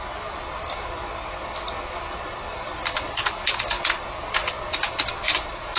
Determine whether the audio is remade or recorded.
recorded